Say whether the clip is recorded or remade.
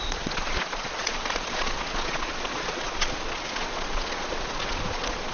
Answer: remade